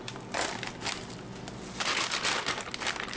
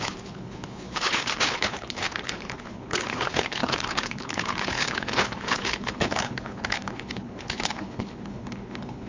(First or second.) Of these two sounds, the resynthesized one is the second